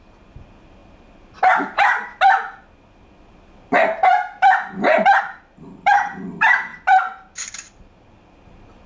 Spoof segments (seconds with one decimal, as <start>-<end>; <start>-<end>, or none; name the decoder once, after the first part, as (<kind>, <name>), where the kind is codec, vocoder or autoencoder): none